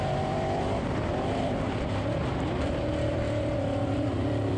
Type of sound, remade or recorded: remade